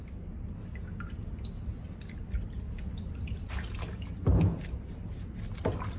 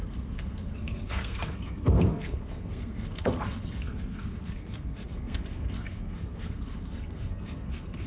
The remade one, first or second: second